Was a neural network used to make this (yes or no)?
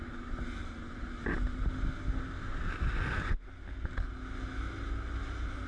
no